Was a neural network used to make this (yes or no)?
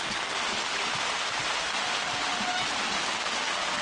no